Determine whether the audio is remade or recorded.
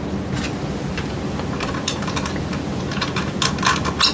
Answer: recorded